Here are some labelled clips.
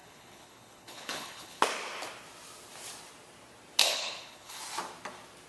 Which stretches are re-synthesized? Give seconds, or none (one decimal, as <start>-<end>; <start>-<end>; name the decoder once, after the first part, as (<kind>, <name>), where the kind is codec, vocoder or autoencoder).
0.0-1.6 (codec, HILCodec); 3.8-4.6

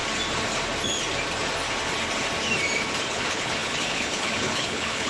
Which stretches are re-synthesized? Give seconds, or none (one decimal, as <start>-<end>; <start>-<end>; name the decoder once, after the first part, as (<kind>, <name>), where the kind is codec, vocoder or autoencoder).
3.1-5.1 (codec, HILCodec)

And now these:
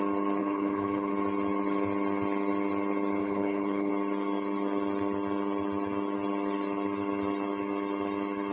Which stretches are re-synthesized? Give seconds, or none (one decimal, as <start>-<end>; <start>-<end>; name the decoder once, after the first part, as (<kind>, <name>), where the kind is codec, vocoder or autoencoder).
0.4-1.1 (codec, HILCodec); 3.2-3.9

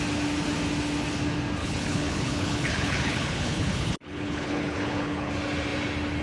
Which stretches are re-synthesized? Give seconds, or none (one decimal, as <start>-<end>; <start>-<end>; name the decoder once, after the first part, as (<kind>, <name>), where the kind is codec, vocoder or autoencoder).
1.6-5.3 (codec, HILCodec)

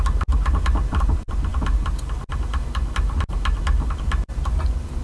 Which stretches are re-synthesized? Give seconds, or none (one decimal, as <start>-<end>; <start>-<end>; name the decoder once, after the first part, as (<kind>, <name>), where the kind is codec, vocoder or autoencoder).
none

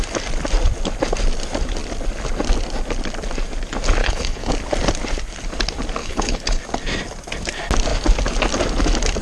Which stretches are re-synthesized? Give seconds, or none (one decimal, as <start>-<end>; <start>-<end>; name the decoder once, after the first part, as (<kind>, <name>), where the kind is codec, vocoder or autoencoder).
4.0-4.5 (codec, HILCodec); 6.0-6.6